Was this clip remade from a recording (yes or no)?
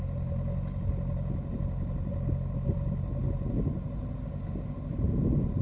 no